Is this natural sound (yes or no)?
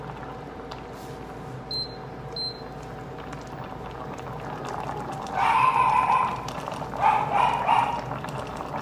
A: yes